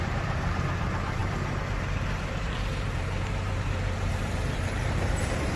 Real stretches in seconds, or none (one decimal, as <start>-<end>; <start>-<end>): none